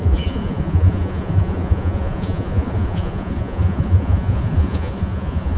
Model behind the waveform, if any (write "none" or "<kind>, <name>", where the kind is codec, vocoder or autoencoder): vocoder, Vocos